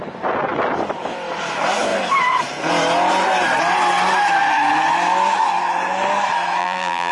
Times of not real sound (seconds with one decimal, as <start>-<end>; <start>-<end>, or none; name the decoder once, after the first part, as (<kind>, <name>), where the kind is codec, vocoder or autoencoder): 6.6-7.1 (vocoder, BigVGAN v2)